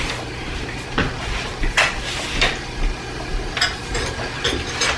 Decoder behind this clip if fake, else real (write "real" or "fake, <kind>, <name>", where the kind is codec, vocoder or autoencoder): real